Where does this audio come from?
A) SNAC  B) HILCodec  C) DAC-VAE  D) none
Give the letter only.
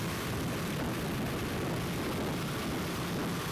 D